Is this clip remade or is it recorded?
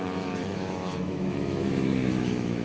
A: remade